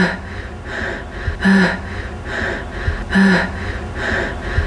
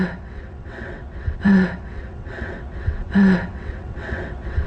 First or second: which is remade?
second